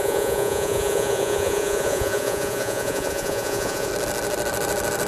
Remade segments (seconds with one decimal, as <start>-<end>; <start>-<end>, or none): 0.0-3.9